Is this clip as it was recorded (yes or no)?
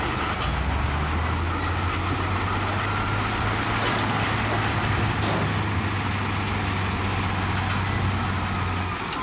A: yes